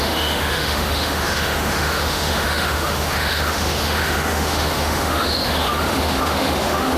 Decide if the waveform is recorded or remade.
remade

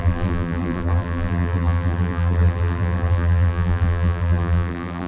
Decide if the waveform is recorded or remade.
remade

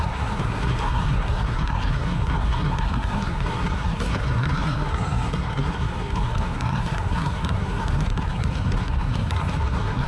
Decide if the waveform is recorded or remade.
remade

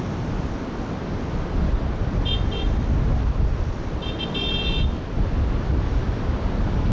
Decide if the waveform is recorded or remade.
recorded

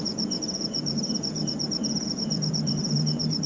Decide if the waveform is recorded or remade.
remade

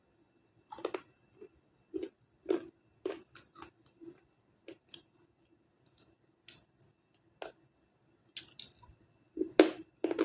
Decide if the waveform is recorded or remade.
recorded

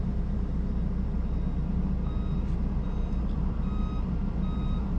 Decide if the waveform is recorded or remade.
recorded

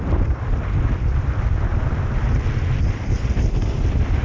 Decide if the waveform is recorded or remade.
recorded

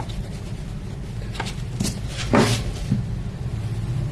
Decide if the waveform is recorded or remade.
recorded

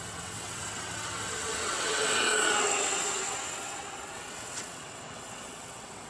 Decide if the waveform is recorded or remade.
remade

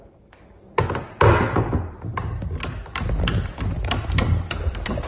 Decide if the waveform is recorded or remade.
remade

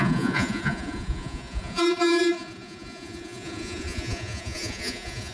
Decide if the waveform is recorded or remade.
remade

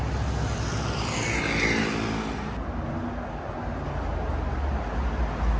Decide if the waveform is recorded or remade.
recorded